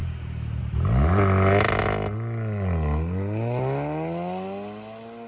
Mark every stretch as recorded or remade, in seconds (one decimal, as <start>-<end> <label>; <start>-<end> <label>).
0.0-5.3 recorded